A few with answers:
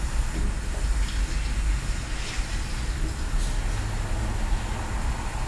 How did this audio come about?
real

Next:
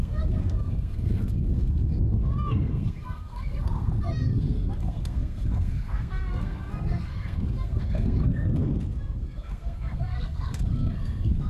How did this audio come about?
fake